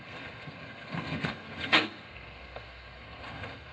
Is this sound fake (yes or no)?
yes